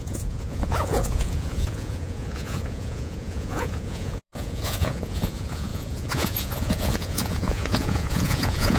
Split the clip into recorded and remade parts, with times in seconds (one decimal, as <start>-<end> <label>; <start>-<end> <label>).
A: 0.0-8.8 remade